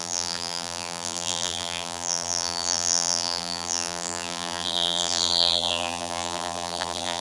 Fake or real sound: fake